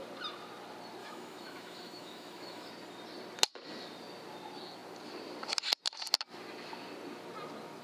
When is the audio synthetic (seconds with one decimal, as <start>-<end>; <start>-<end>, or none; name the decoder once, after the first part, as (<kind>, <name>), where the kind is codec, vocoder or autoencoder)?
1.0-2.7 (autoencoder, DAC-VAE)